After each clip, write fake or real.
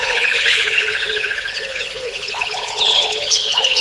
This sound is fake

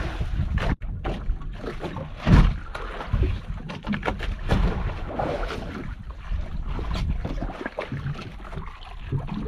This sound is real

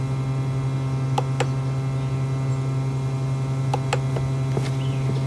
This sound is real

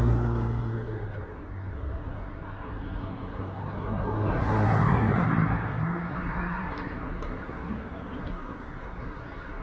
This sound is fake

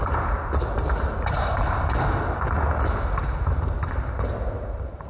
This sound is real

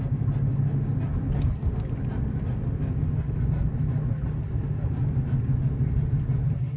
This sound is real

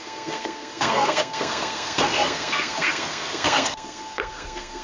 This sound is fake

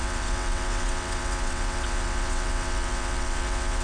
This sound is fake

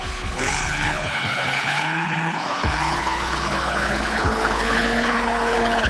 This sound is fake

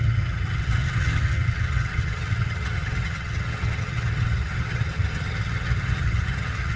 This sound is fake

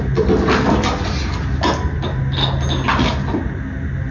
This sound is real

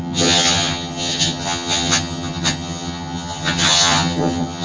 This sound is fake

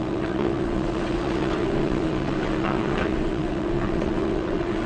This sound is fake